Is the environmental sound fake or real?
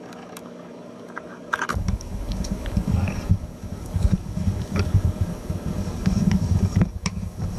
fake